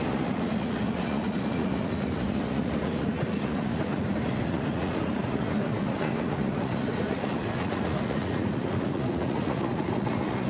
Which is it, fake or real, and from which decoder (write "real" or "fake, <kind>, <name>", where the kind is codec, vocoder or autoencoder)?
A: fake, vocoder, Vocos